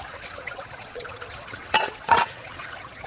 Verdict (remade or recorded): remade